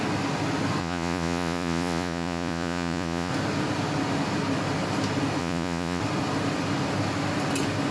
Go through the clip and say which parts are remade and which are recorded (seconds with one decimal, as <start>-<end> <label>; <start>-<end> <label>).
0.0-0.8 recorded; 0.8-3.3 remade; 3.3-5.4 recorded; 5.4-6.0 remade; 6.0-7.9 recorded